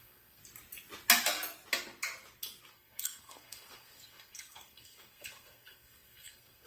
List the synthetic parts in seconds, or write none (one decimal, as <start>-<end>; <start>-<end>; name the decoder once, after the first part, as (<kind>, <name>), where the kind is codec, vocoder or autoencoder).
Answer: 0.0-0.4 (codec, SNAC); 2.7-6.7